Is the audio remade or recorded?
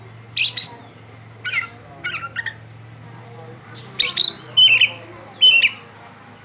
recorded